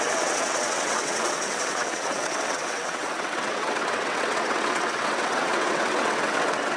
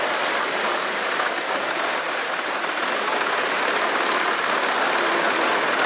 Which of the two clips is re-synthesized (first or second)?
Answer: first